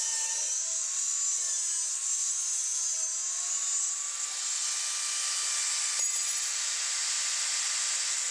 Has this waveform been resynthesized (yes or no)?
no